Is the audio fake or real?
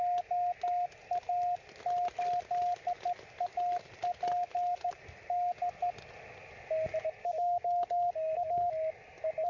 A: real